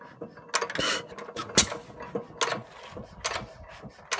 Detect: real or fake real